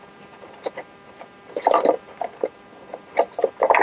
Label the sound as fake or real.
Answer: fake